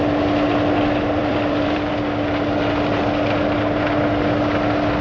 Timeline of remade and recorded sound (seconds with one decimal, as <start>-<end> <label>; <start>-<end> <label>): 0.0-1.2 recorded; 1.2-1.9 remade; 1.9-5.0 recorded